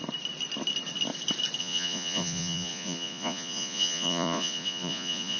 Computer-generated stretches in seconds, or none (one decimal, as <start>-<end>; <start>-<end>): 1.6-5.4